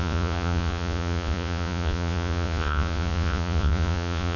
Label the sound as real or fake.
fake